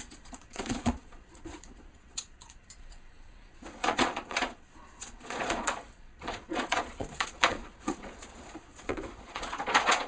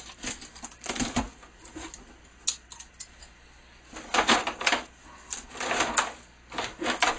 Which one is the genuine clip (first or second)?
second